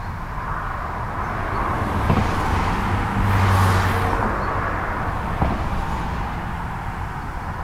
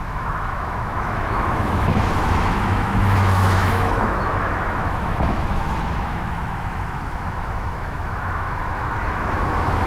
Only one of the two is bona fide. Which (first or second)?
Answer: first